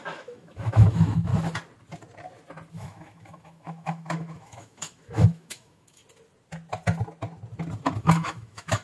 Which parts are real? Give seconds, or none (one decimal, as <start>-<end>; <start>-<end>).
1.3-2.7; 6.0-8.0